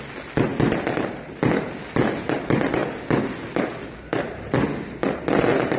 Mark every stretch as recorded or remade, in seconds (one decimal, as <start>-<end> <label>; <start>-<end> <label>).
0.0-5.8 recorded

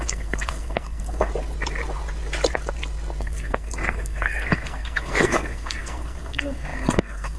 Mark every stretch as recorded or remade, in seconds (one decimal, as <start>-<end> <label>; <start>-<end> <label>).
0.0-1.3 remade; 1.3-3.2 recorded; 3.2-7.4 remade

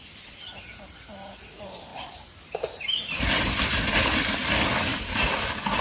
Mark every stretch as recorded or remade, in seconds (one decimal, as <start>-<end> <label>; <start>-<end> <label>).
0.0-5.8 recorded

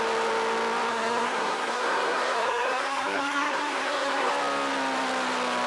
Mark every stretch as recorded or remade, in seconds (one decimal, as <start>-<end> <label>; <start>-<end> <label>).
0.0-0.9 recorded; 0.9-4.3 remade; 4.3-5.7 recorded

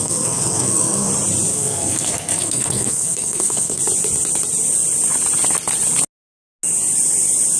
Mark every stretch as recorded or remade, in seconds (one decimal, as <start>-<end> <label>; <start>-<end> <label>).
0.0-1.1 remade; 1.1-1.5 recorded; 1.5-3.8 remade; 3.8-7.6 recorded